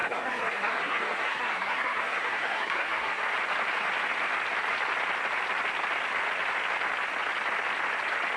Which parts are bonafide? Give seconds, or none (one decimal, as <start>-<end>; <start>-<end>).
3.2-8.4